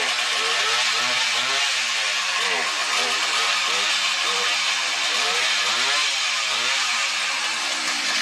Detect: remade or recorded recorded